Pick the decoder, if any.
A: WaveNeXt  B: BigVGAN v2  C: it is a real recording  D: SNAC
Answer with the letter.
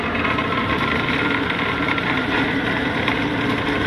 B